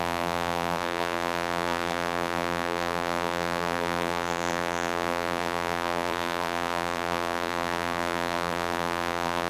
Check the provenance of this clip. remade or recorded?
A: remade